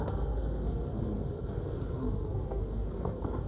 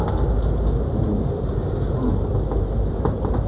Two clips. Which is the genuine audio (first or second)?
second